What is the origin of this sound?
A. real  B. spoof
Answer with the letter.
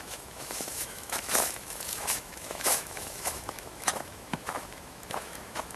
B